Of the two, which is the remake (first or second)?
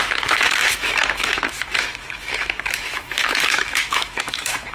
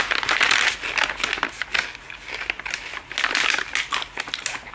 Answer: first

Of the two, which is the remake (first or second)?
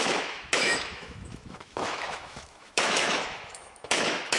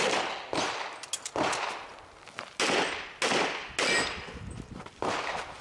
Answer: first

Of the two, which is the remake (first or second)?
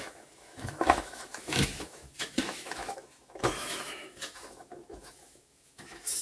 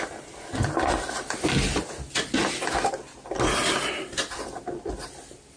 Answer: first